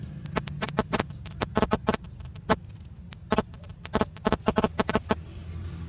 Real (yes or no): yes